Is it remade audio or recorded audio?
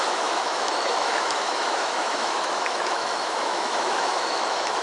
remade